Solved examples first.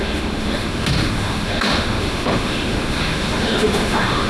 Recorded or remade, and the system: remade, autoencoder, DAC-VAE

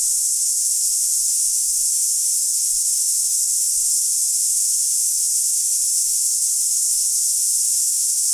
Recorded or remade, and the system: remade, autoencoder, DAC-VAE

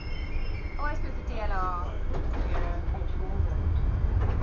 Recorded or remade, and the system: recorded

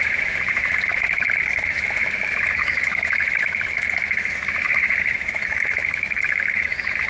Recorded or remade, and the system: remade, autoencoder, DAC-VAE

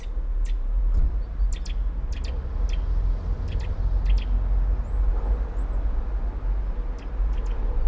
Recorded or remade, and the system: recorded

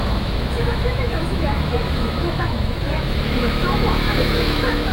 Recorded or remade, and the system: remade, autoencoder, DAC-VAE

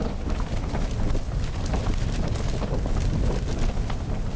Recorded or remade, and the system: recorded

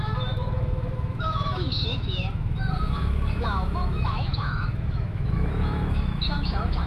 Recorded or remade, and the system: remade, autoencoder, DAC-VAE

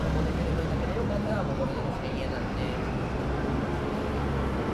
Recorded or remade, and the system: recorded